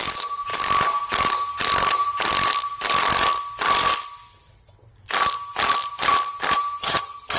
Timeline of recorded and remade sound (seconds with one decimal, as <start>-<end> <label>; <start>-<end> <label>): 0.0-6.8 recorded; 6.8-7.4 remade